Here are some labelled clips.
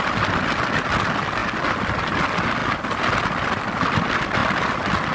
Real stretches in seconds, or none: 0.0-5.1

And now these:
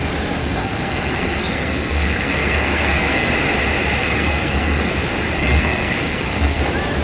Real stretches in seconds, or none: 0.0-0.4; 3.3-4.0; 4.9-5.4; 6.6-7.0

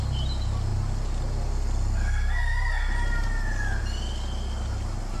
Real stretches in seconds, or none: 0.0-5.2

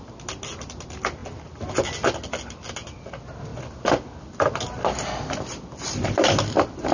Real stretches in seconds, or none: 0.0-6.9

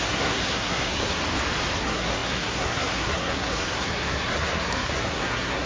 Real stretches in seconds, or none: 1.2-1.8

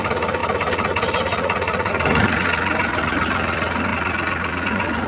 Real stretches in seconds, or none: none